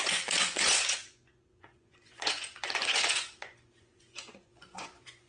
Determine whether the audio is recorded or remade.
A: remade